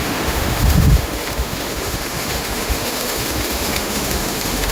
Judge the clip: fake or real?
fake